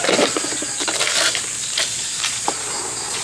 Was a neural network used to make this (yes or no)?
yes